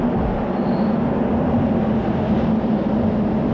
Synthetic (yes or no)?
no